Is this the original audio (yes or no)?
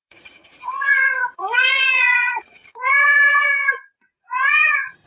no